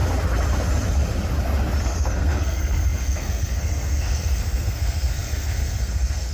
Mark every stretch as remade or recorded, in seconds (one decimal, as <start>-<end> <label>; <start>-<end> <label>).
0.0-1.8 recorded; 1.8-6.3 remade